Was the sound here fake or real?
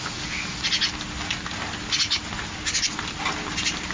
real